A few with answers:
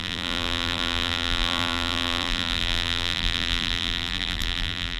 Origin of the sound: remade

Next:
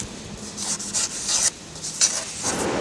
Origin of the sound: recorded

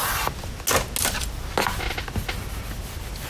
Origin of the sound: recorded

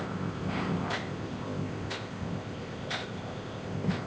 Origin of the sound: remade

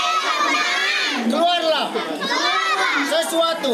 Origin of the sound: recorded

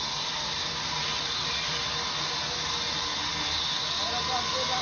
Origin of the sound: recorded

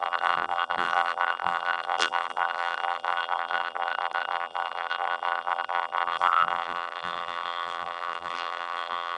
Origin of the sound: remade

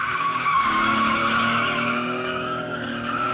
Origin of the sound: remade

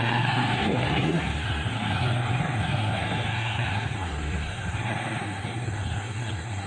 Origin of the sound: remade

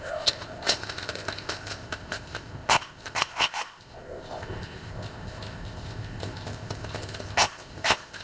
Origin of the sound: remade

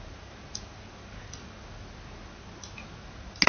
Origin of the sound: recorded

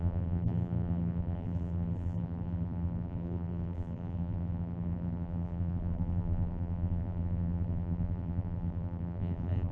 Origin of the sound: remade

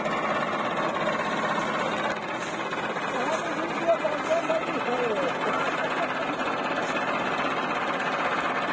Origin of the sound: recorded